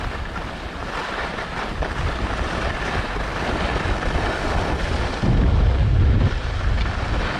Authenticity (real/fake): real